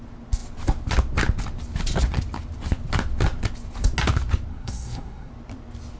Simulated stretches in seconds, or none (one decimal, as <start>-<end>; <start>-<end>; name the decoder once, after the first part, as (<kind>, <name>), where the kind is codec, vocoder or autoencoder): 4.5-5.3 (codec, SNAC)